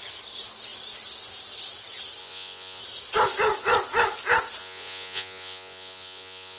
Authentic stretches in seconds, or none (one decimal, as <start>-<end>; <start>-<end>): 0.0-2.2; 2.8-4.6